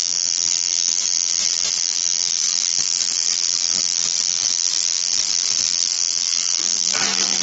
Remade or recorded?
remade